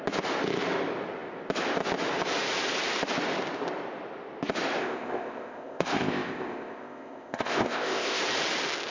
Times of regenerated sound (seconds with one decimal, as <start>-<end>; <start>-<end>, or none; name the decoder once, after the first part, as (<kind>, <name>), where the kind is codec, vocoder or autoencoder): 4.8-8.2 (codec, ZipCodec)